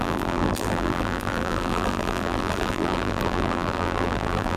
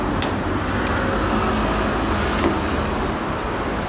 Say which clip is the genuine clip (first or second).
second